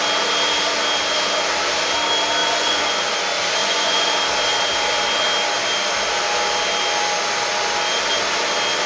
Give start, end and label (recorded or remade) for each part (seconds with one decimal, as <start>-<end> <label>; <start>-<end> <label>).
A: 0.0-2.4 recorded; 2.4-3.0 remade; 3.0-3.6 recorded; 3.6-4.1 remade; 4.1-8.9 recorded